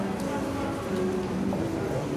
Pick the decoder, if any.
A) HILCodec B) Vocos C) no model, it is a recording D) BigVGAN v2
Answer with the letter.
C